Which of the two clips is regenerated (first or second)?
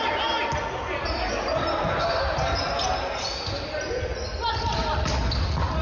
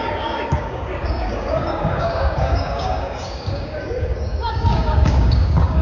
second